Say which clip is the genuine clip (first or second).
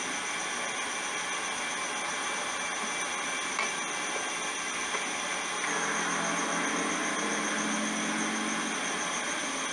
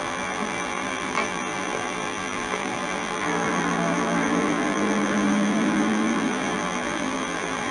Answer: first